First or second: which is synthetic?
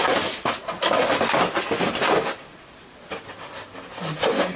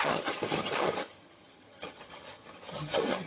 second